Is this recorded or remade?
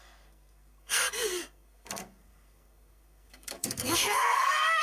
remade